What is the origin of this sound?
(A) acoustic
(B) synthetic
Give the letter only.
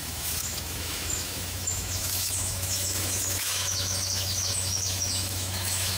B